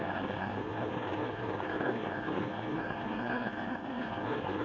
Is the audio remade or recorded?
remade